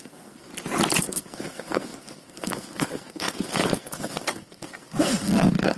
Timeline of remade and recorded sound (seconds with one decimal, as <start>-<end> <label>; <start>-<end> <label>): 0.0-0.5 remade; 0.5-1.0 recorded; 1.0-5.8 remade